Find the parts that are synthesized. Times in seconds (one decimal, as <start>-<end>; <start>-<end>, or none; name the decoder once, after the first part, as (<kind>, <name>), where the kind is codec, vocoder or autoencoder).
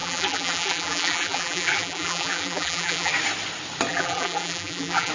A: 0.0-3.1 (vocoder, BigVGAN v2); 3.9-5.1